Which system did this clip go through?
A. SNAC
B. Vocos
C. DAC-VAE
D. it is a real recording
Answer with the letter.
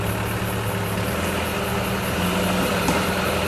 D